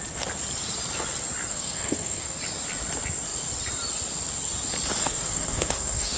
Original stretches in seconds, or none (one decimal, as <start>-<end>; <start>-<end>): 0.0-1.5; 2.4-5.0